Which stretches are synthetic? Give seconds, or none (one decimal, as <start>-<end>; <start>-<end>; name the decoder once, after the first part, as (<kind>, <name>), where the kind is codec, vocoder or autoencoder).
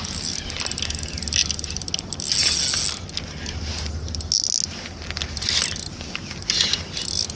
none